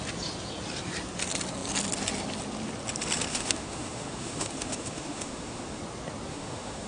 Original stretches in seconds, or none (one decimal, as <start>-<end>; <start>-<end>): 0.0-3.3; 5.8-6.3